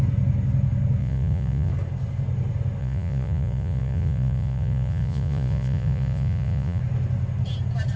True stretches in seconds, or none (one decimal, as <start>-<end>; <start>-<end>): 0.0-1.0; 1.7-2.8; 6.8-8.0